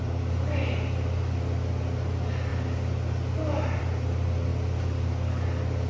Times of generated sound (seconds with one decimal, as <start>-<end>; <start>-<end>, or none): none